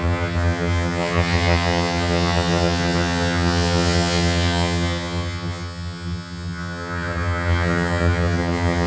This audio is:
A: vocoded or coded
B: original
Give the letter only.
A